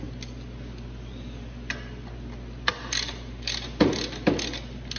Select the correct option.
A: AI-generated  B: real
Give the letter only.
B